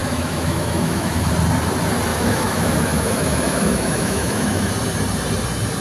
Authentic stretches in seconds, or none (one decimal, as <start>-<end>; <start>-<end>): 1.3-2.1; 4.7-5.8